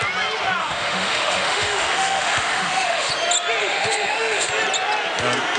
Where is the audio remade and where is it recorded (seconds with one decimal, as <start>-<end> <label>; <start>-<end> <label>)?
0.0-0.6 recorded; 0.6-3.1 remade; 3.1-3.6 recorded; 3.6-4.5 remade; 4.5-5.6 recorded